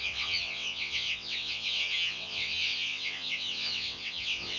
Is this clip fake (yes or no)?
yes